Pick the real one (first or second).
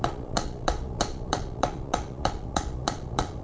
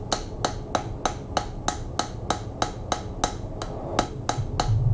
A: second